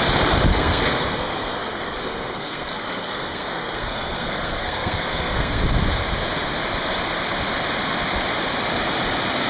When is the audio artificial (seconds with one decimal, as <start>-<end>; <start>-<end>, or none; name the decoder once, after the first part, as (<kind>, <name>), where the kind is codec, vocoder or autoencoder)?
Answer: 0.5-5.6 (codec, SNAC)